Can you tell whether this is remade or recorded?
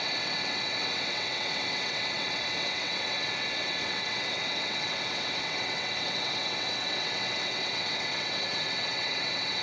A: remade